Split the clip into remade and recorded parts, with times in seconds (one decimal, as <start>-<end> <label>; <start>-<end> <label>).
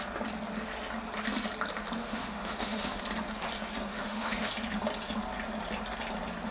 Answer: 0.0-2.0 recorded; 2.0-3.0 remade; 3.0-3.9 recorded; 3.9-4.5 remade; 4.5-6.5 recorded